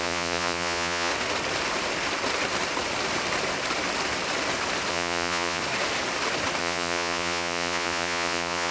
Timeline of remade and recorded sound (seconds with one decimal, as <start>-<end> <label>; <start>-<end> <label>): 0.0-1.1 remade; 1.1-4.9 recorded; 4.9-5.6 remade; 5.6-6.6 recorded; 6.6-8.7 remade

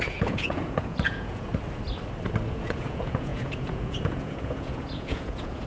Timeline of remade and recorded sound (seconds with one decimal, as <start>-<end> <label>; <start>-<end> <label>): 0.0-1.5 remade; 1.5-2.5 recorded; 2.5-5.7 remade

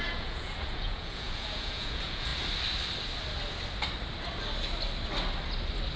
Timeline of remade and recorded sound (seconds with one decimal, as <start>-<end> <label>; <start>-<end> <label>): 0.0-2.3 remade; 2.3-6.0 recorded

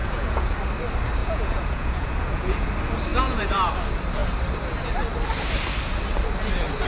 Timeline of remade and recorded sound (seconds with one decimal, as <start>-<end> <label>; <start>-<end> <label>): 0.0-0.6 remade; 0.6-1.2 recorded; 1.2-2.7 remade; 2.7-3.1 recorded; 3.1-3.7 remade; 3.7-6.9 recorded

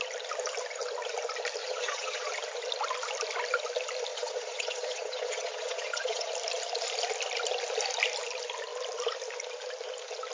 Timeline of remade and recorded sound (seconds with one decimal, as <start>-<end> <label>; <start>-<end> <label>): 0.0-1.6 recorded; 1.6-2.3 remade; 2.3-4.1 recorded; 4.1-6.3 remade; 6.3-10.3 recorded